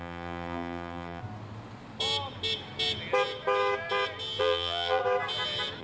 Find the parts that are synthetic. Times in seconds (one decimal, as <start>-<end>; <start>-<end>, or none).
0.0-1.2; 4.4-5.0